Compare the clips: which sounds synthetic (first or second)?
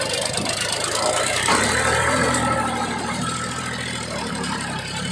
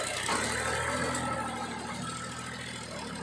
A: first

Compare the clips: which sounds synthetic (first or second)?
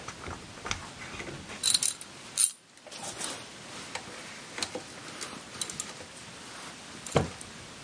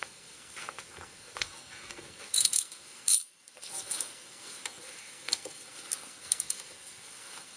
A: second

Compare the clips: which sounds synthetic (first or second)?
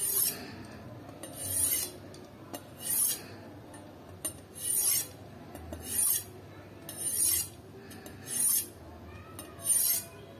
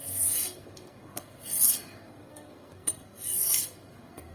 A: second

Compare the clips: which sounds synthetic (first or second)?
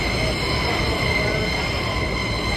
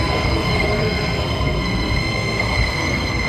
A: second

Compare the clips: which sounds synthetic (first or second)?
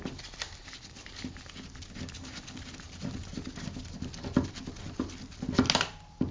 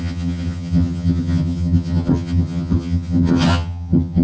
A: second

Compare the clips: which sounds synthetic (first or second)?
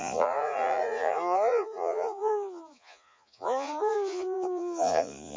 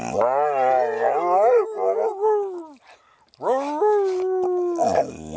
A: first